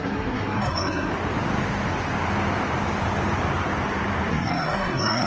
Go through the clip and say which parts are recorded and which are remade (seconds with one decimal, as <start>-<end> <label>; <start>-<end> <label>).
0.0-1.1 remade; 1.1-4.3 recorded; 4.3-5.3 remade